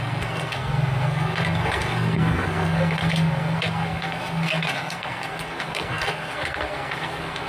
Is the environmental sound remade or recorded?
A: remade